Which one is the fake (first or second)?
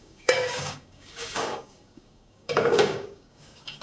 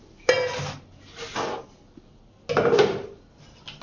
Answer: first